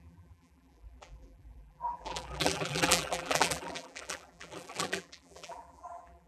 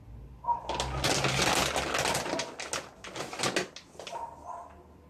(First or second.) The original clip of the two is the second